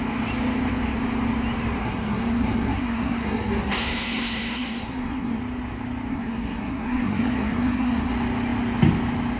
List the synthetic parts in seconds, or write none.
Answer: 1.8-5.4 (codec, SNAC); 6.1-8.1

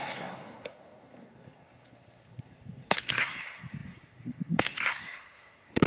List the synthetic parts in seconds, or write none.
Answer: 0.0-5.9 (codec, SNAC)

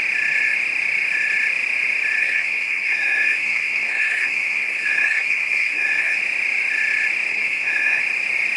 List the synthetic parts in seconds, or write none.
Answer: 2.2-6.2 (codec, SNAC); 7.3-8.0

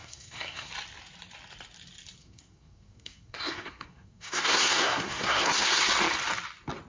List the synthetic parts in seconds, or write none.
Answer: 0.0-0.7 (codec, SNAC); 2.2-5.8

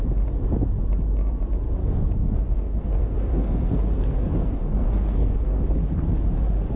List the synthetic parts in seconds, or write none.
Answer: 1.8-5.6 (codec, SNAC)

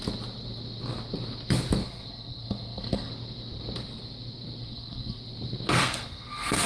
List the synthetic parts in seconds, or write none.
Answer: 1.8-3.1 (codec, SNAC); 4.6-5.2; 5.8-6.7

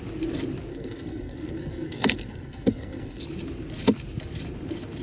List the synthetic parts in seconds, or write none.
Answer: 0.7-3.2 (codec, SNAC)